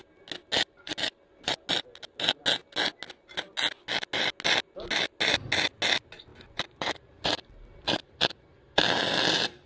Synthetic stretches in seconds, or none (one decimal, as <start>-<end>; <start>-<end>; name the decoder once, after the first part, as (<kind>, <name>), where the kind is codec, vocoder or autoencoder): none